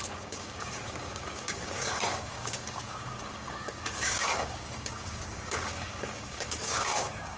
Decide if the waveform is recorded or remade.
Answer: remade